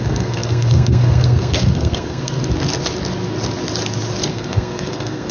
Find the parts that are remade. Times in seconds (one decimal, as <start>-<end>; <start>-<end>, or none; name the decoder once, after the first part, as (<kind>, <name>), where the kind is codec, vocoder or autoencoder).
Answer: 0.0-2.4 (codec, SNAC); 4.3-5.3